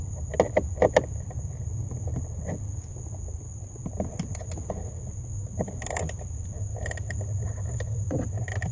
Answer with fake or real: real